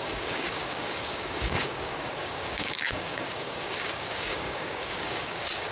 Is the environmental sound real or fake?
fake